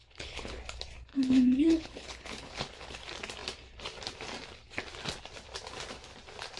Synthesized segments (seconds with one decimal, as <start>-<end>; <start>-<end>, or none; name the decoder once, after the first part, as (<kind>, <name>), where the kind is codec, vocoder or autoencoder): 0.0-0.6 (codec, HILCodec); 1.1-2.9